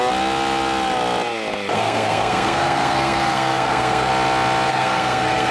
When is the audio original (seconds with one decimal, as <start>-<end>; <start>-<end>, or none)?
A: 0.0-1.7; 4.1-4.7